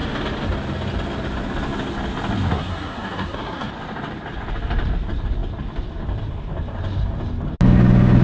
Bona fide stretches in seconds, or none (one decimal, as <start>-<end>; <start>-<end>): 0.0-2.5; 3.7-8.2

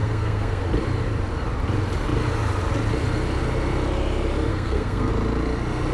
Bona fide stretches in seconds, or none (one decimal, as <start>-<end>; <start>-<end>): 0.6-4.5; 5.1-5.9

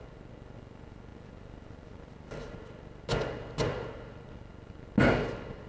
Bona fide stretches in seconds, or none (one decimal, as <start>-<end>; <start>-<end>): 0.0-5.7